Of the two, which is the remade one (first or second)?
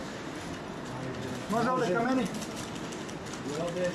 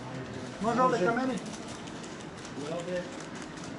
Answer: second